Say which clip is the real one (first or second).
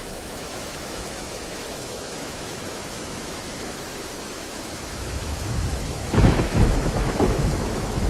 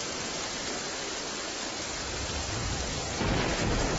second